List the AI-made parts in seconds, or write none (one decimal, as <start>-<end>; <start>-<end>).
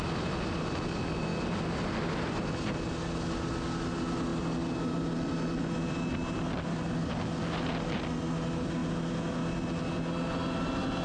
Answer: none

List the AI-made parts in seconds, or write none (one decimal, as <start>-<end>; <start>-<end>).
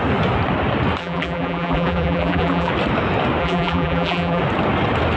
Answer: 1.0-2.7; 3.4-4.4